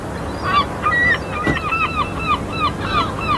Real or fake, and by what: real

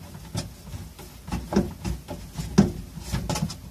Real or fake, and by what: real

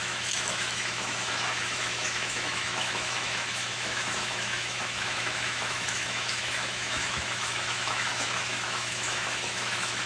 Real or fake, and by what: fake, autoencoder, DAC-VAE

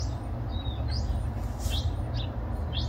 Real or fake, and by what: real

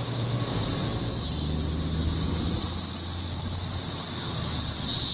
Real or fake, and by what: real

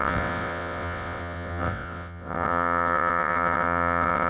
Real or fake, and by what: fake, vocoder, WaveNeXt